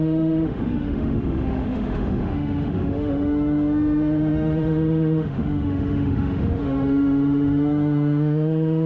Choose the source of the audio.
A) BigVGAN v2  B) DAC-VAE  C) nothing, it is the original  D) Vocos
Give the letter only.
B